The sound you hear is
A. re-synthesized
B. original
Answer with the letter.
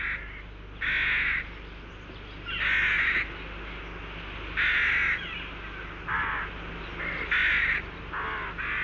B